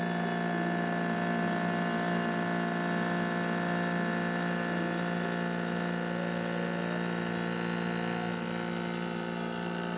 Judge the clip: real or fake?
real